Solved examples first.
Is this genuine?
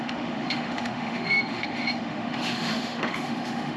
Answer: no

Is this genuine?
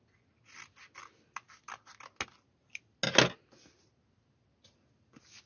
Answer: yes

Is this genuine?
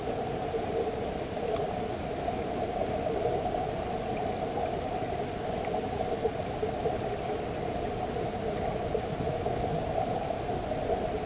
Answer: yes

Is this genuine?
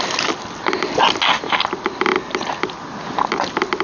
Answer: yes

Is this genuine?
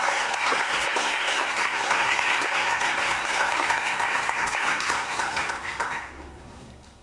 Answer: no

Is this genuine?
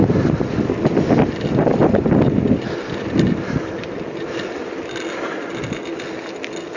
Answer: yes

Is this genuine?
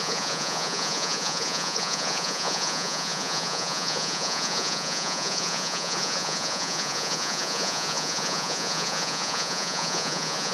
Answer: no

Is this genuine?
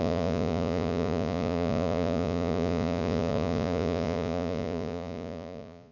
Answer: no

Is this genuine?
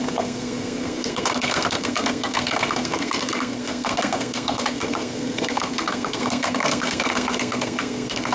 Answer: no